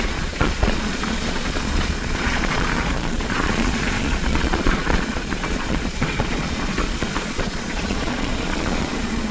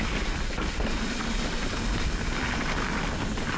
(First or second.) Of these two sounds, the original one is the second